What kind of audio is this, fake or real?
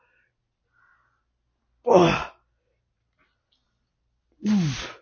real